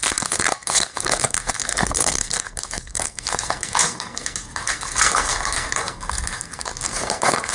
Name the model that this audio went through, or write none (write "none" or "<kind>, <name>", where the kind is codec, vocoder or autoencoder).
codec, SNAC